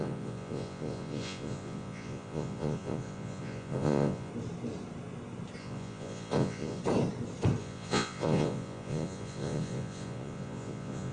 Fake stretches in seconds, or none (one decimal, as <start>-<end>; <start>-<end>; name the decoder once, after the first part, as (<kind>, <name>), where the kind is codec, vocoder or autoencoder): 0.0-4.3 (vocoder, Vocos); 5.6-6.8; 7.6-11.1